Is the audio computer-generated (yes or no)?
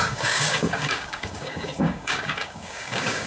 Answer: yes